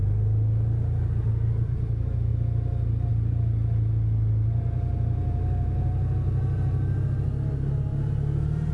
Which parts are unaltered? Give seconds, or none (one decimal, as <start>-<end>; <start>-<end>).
0.0-8.7